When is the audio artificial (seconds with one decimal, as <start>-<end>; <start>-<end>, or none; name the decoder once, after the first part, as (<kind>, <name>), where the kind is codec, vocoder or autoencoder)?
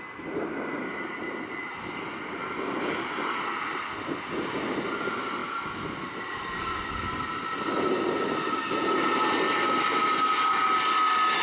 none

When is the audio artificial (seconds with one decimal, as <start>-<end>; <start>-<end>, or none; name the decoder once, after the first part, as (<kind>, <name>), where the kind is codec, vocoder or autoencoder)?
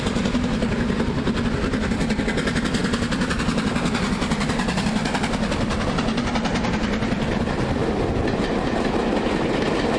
none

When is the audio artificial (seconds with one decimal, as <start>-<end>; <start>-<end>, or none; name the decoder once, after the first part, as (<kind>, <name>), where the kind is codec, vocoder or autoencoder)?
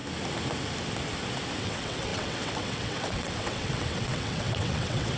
1.6-5.2 (vocoder, WaveNeXt)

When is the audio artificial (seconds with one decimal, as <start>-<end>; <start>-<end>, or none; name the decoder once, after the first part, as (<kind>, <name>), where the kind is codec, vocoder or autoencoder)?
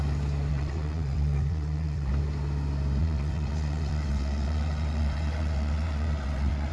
0.5-2.1 (vocoder, WaveNeXt); 3.0-6.7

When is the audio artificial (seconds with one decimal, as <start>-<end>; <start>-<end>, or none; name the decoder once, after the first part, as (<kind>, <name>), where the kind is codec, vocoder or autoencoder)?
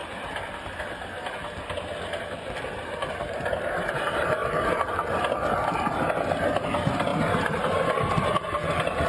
none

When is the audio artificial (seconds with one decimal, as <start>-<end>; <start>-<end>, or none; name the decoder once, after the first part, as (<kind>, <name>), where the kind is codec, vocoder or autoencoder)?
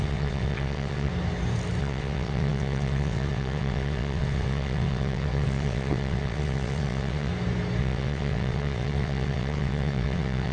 0.0-1.1 (vocoder, WaveNeXt); 1.8-7.3; 7.8-10.5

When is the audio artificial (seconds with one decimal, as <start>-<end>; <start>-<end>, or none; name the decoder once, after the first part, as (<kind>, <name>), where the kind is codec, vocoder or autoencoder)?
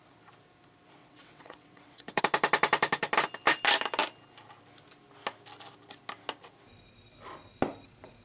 1.0-2.2 (vocoder, WaveNeXt)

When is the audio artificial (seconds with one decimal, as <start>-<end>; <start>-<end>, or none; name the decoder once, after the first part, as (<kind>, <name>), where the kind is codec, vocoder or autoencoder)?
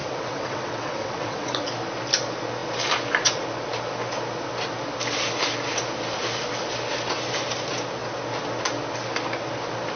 0.0-1.6 (vocoder, WaveNeXt)